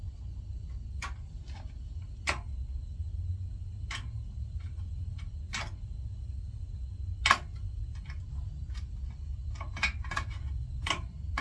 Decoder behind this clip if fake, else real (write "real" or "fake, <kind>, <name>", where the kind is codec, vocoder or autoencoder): real